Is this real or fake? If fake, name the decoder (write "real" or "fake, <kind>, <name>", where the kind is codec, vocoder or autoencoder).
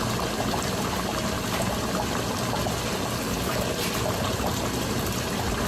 real